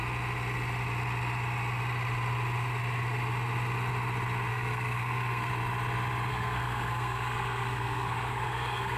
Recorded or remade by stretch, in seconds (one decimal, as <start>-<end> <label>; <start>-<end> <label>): 0.0-4.5 recorded; 4.5-5.5 remade; 5.5-6.3 recorded; 6.3-9.0 remade